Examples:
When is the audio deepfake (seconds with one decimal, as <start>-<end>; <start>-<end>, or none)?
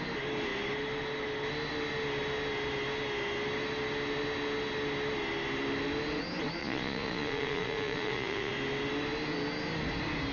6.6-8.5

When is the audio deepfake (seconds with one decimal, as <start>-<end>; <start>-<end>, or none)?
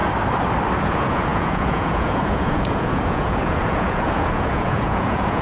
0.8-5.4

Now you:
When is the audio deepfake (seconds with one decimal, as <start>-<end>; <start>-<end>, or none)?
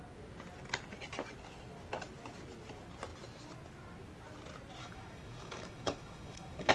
4.8-6.7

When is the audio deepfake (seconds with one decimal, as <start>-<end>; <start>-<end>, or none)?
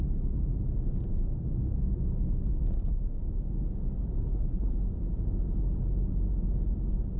4.2-4.7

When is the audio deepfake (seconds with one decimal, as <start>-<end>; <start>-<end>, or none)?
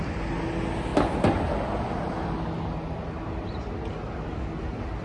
none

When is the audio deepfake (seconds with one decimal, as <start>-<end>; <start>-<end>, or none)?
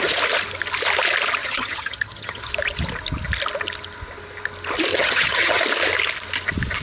1.4-2.5; 4.9-5.6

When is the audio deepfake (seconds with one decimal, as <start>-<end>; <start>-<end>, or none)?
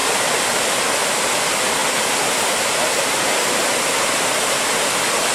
none